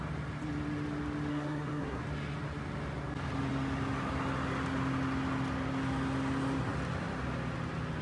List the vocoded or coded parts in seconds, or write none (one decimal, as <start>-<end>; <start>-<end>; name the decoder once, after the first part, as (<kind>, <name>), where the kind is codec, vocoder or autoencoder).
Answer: 1.3-2.0 (codec, SNAC)